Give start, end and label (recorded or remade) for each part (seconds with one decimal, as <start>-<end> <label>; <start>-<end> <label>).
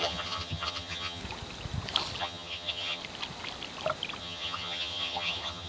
0.0-1.2 remade; 1.2-2.2 recorded; 2.2-3.0 remade; 3.0-4.2 recorded; 4.2-5.7 remade